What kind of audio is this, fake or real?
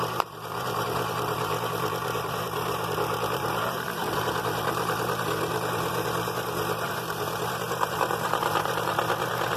fake